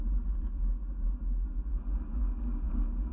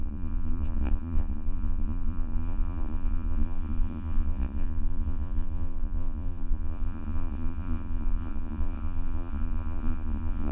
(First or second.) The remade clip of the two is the second